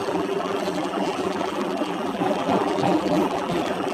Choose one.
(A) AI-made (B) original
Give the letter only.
A